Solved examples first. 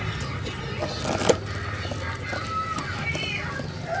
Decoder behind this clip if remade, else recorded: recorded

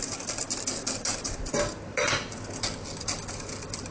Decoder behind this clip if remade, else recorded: recorded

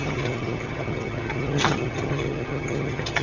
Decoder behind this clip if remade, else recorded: remade, vocoder, HiFi-GAN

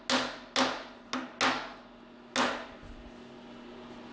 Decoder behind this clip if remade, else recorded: recorded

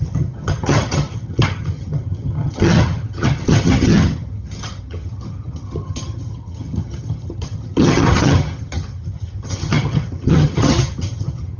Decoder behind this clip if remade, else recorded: remade, vocoder, HiFi-GAN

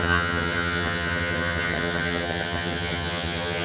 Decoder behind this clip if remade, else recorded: remade, vocoder, HiFi-GAN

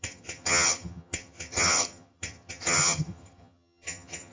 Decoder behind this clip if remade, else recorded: remade, vocoder, HiFi-GAN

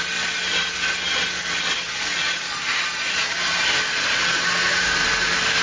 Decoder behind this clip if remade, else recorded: recorded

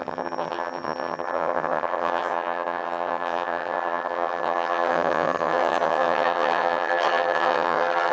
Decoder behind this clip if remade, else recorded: remade, vocoder, HiFi-GAN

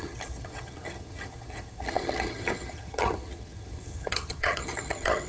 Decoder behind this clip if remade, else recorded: remade, vocoder, HiFi-GAN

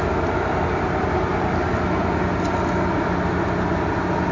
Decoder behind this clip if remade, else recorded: recorded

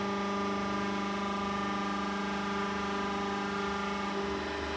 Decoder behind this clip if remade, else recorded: recorded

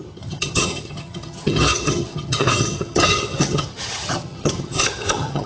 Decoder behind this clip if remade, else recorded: remade, vocoder, HiFi-GAN